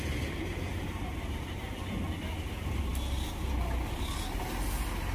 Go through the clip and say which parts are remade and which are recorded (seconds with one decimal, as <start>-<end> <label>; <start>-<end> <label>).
0.0-0.7 recorded; 0.7-1.8 remade; 1.8-5.1 recorded